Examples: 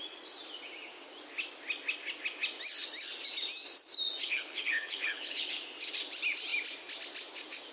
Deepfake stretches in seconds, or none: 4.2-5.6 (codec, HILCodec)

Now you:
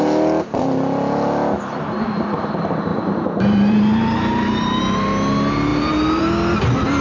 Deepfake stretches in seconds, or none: 2.9-4.8 (vocoder, BigVGAN v2); 5.7-6.2

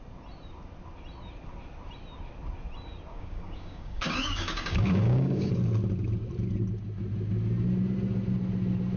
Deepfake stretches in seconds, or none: 3.1-5.5 (codec, DAC)

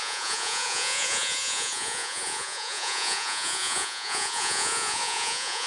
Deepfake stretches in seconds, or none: 0.0-5.7 (vocoder, Vocos)